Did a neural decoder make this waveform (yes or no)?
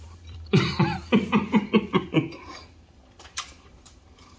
yes